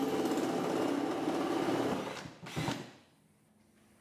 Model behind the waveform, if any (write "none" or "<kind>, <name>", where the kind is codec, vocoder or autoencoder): none